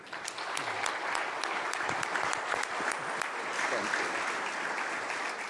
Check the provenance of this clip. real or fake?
real